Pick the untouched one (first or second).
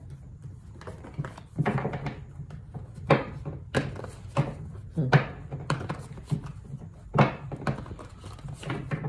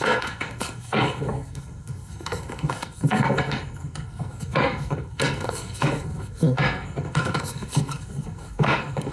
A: first